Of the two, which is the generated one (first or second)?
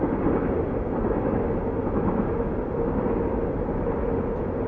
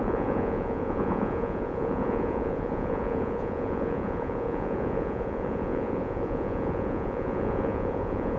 second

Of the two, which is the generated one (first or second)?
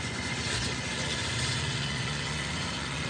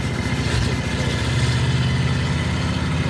first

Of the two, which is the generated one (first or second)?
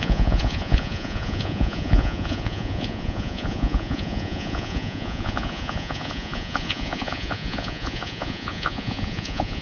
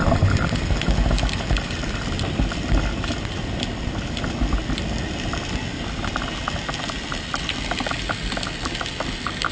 first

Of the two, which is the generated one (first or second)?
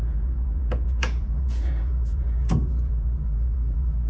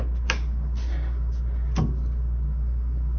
first